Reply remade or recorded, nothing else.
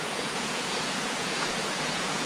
remade